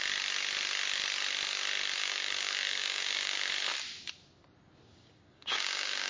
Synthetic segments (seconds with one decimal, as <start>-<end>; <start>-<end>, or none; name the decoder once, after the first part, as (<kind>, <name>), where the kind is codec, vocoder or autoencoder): 2.0-3.5 (codec, DAC); 4.9-6.1